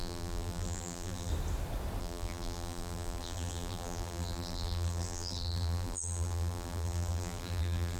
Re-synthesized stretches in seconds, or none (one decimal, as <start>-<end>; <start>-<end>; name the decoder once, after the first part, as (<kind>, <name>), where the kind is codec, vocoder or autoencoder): 0.0-1.3 (vocoder, BigVGAN v2); 2.0-8.0